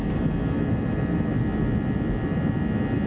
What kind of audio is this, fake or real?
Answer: real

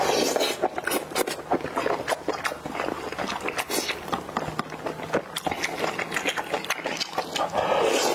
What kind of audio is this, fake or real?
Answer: real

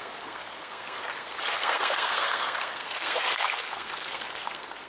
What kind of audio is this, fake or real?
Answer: fake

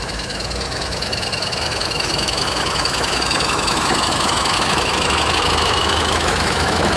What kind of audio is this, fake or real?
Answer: fake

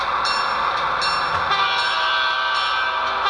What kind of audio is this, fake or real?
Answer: real